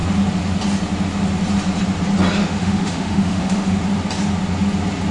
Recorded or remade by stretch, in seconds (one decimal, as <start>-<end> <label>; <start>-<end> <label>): 0.0-2.4 recorded; 2.4-3.8 remade; 3.8-5.1 recorded